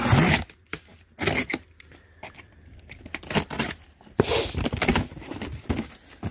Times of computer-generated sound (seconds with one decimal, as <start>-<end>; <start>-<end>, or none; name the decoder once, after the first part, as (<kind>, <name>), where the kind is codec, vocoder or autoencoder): 0.9-4.7 (vocoder, BigVGAN v2)